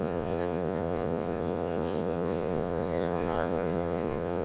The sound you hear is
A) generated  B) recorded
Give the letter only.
A